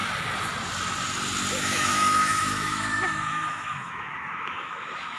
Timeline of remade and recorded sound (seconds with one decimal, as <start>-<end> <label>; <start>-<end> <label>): 0.0-1.5 recorded; 1.5-5.2 remade

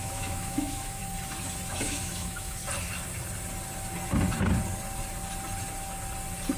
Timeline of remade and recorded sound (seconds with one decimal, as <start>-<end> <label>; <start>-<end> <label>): 0.0-1.0 remade; 1.0-1.7 recorded; 1.7-2.6 remade; 2.6-6.6 recorded

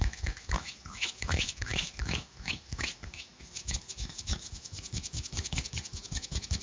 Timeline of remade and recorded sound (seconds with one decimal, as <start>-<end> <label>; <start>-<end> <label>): 0.0-6.6 remade

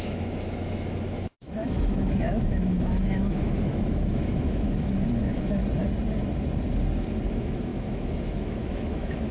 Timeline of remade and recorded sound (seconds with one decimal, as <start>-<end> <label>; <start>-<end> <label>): 0.0-5.6 remade; 5.6-7.3 recorded; 7.3-9.3 remade

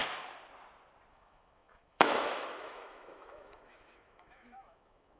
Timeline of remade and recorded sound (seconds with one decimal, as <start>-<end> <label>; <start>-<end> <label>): 0.0-1.1 recorded; 1.1-5.2 remade

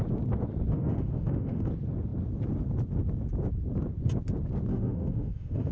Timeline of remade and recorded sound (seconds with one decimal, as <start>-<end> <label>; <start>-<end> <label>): 0.0-0.7 recorded; 0.7-1.7 remade; 1.7-4.7 recorded; 4.7-5.7 remade